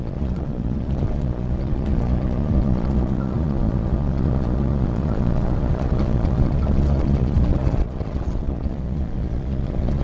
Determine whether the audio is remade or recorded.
remade